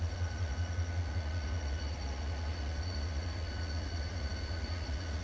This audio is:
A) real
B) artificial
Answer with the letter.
B